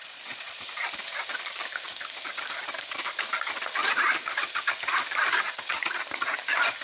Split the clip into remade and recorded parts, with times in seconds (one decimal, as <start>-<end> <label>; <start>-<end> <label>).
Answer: 0.0-0.6 remade; 0.6-6.8 recorded